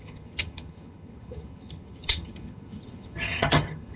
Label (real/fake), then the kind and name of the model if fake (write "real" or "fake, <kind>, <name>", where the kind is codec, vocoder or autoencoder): fake, vocoder, HiFi-GAN